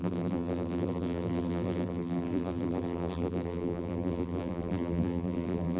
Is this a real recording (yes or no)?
no